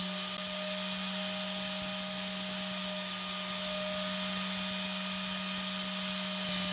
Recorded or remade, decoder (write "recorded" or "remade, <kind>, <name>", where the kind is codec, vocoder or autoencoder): recorded